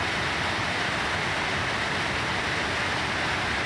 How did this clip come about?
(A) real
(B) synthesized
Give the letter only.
A